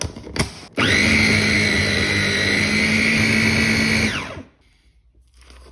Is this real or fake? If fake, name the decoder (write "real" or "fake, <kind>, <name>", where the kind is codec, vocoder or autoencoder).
real